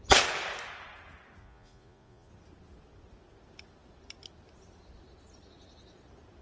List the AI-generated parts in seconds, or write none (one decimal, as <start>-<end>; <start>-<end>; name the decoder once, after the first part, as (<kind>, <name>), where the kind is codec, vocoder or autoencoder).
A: 1.4-2.3 (vocoder, Vocos)